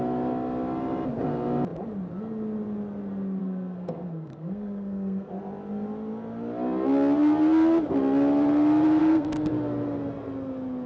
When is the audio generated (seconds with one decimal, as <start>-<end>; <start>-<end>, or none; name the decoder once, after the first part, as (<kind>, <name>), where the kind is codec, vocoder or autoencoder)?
3.4-5.3 (codec, SNAC); 9.0-9.5